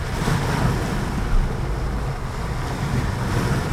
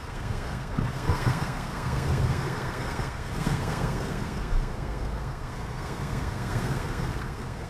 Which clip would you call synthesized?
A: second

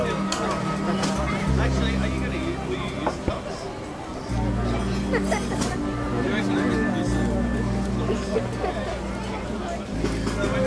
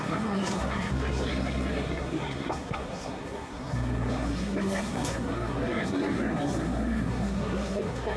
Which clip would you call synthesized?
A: second